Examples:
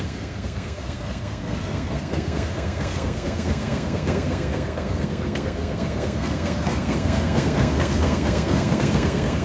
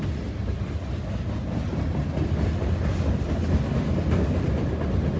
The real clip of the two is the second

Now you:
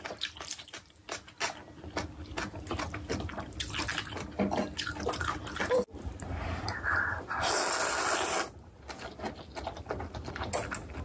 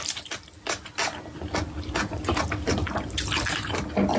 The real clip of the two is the first